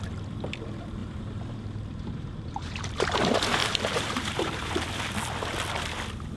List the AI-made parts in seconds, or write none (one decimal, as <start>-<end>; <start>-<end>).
1.0-3.2; 3.6-4.7